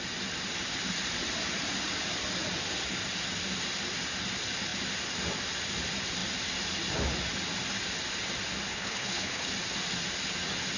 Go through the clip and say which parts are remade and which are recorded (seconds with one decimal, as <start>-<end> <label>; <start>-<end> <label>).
0.0-8.7 recorded; 8.7-9.5 remade; 9.5-10.8 recorded